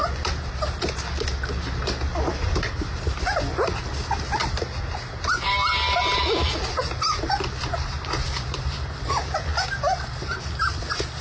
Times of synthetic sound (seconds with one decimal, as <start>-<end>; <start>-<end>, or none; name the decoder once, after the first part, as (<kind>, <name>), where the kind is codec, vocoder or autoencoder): none